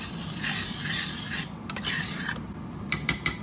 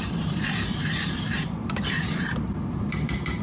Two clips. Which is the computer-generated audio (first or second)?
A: second